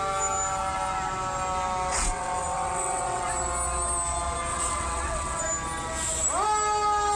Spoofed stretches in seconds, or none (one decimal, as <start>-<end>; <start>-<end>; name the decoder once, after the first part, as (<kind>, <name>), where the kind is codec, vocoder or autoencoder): 1.9-3.3 (vocoder, WaveNeXt); 4.5-5.4